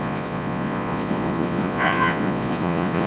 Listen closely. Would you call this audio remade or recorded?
remade